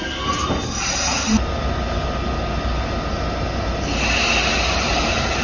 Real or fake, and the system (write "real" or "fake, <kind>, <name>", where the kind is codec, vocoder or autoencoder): real